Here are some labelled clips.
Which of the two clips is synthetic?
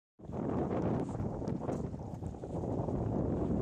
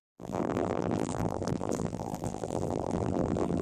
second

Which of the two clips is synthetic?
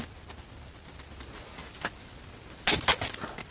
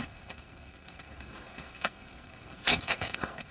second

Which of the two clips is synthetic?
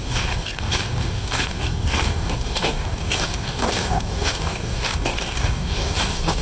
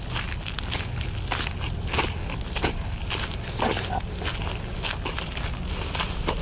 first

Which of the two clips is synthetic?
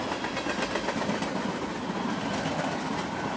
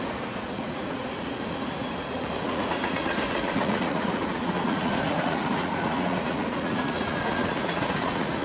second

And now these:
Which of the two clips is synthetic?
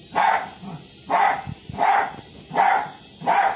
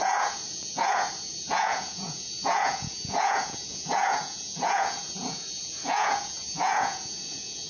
second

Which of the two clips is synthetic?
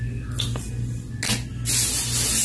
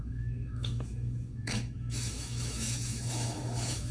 second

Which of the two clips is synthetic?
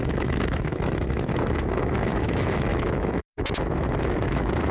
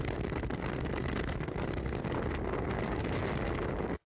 first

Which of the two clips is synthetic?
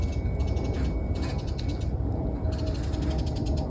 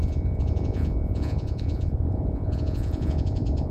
second